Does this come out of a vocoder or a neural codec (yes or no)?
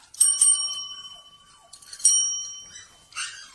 yes